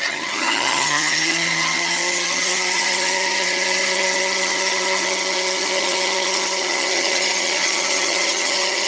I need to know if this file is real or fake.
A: fake